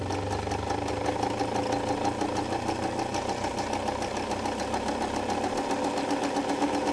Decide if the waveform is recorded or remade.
recorded